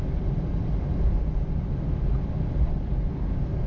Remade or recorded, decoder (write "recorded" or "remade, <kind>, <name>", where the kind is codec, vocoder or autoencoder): recorded